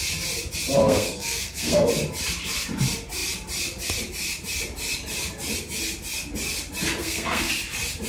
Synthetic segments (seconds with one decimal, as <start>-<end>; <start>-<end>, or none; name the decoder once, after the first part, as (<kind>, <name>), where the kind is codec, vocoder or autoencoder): 0.8-1.9 (codec, SNAC); 7.0-7.5